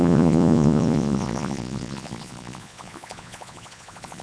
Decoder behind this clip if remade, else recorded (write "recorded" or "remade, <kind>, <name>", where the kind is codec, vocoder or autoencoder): remade, vocoder, Vocos